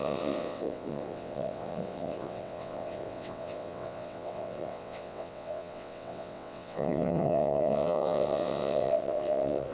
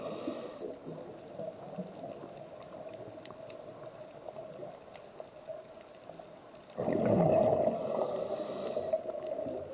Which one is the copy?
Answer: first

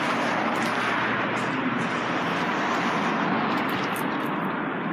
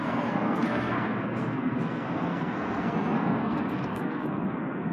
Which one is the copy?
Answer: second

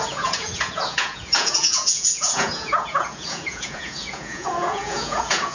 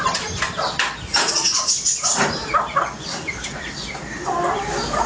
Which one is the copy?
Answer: first